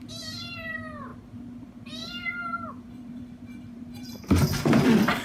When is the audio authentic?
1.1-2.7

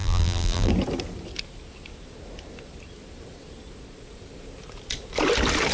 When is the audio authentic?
0.7-5.7

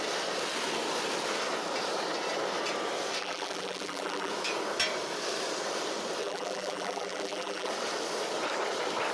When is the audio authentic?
0.0-3.2; 4.3-6.2; 7.7-9.1

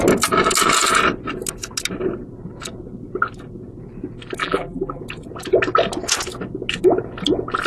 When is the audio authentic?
0.0-4.4; 5.0-7.7